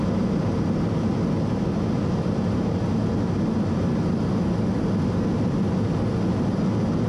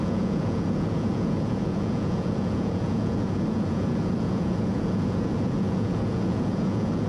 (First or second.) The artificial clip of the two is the second